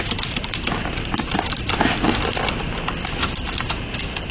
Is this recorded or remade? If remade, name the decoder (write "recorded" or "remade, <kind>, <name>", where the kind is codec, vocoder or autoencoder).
remade, vocoder, BigVGAN v2